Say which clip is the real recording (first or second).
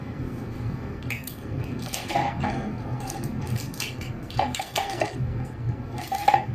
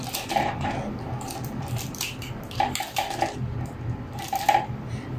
second